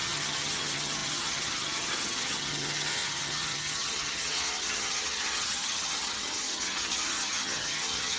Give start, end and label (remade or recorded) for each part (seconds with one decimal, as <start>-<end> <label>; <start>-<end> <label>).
0.0-8.2 remade